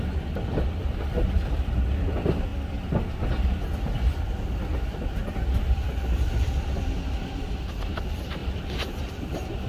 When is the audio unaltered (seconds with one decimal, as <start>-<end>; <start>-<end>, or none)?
0.0-0.8; 1.4-8.4; 9.0-9.7